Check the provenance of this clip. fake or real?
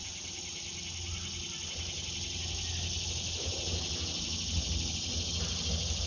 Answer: real